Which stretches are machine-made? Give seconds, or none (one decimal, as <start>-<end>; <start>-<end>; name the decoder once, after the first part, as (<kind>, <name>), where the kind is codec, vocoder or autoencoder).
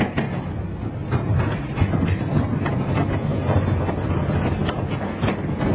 none